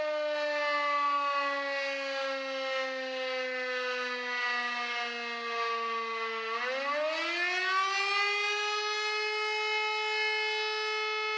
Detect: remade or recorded recorded